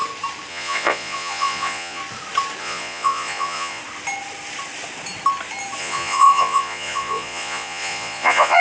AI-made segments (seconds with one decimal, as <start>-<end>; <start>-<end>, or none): 0.5-2.0; 2.6-3.8; 5.8-8.6